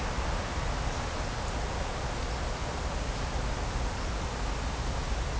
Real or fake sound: real